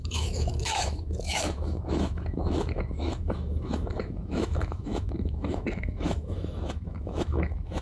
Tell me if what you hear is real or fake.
fake